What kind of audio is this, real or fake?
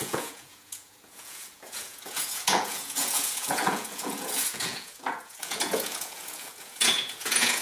fake